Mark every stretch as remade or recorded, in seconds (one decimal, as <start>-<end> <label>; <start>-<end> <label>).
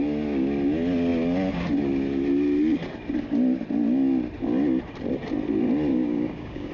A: 0.0-5.9 recorded; 5.9-6.7 remade